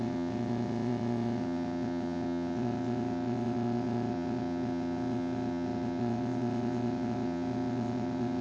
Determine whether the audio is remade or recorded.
remade